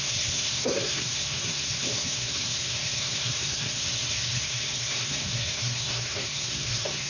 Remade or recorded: remade